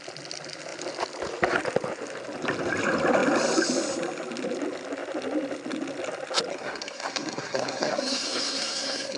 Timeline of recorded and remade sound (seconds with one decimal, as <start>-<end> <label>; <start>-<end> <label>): 0.0-6.5 recorded; 6.5-9.2 remade